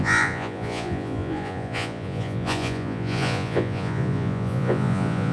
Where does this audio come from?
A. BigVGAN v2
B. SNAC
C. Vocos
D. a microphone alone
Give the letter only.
C